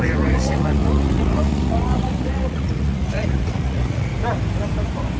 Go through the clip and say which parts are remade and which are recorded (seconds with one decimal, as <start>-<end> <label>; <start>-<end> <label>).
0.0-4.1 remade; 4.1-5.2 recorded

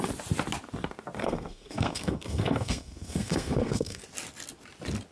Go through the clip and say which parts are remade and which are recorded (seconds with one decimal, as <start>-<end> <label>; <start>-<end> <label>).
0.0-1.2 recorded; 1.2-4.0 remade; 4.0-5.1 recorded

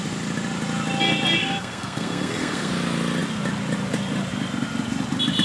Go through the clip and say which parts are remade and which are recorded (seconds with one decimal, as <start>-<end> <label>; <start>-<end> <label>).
0.0-1.4 recorded; 1.4-2.7 remade; 2.7-5.4 recorded